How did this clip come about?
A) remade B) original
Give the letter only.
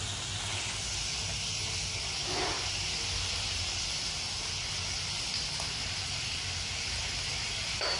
B